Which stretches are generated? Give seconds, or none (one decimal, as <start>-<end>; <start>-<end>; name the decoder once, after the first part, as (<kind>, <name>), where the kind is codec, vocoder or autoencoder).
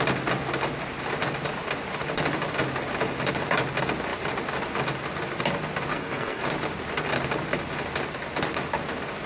5.9-6.4 (codec, SNAC)